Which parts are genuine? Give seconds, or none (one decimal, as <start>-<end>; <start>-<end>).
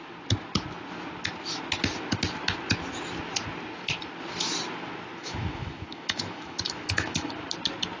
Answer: 0.0-5.2; 7.3-8.0